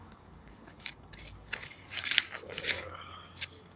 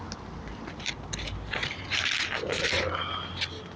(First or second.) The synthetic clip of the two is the first